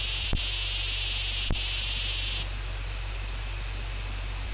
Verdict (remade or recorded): recorded